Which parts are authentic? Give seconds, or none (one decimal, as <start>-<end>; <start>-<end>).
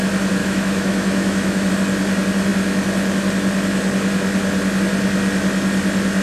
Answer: 0.0-0.4; 1.7-6.2